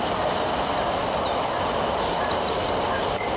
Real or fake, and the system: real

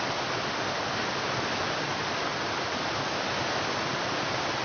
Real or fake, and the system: real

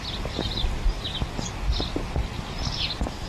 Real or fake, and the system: real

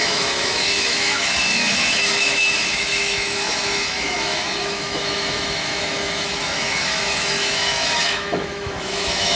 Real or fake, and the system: fake, autoencoder, DAC-VAE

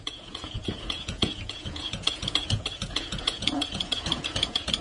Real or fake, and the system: fake, vocoder, Vocos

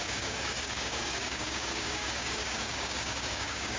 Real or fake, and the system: fake, codec, DAC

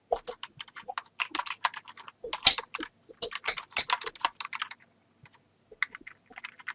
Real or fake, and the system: real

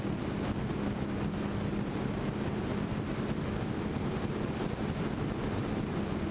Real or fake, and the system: real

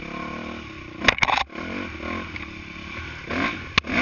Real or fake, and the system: real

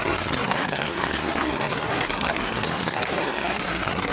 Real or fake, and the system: fake, codec, SNAC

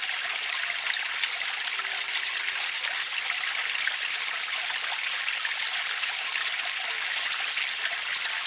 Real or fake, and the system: real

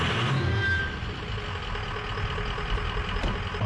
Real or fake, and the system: real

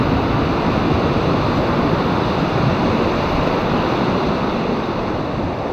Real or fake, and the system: real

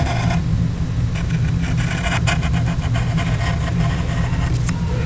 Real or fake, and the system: real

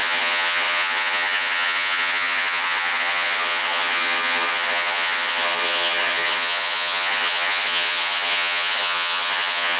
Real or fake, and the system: fake, vocoder, HiFi-GAN